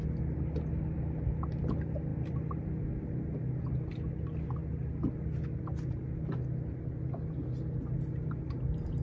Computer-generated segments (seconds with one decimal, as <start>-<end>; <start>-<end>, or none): none